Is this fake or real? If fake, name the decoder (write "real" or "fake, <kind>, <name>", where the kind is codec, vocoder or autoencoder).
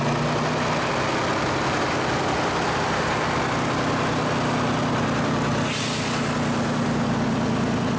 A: real